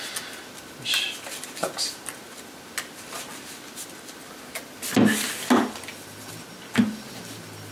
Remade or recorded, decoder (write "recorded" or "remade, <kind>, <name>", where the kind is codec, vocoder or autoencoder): recorded